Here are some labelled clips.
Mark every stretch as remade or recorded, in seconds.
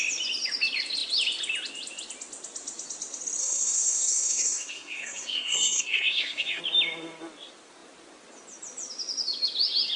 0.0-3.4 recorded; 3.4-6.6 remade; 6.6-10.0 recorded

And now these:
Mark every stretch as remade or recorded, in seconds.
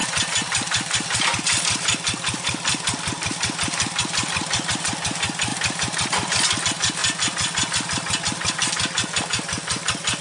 0.0-4.7 remade; 4.7-5.5 recorded; 5.5-6.6 remade; 6.6-7.0 recorded; 7.0-9.2 remade; 9.2-10.2 recorded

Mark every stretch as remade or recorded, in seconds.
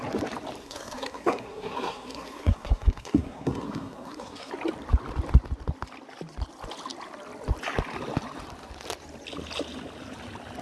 0.0-0.6 recorded; 0.6-4.5 remade; 4.5-10.6 recorded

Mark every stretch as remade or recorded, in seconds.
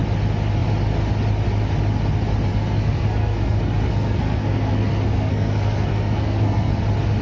0.0-2.5 recorded; 2.5-6.8 remade; 6.8-7.2 recorded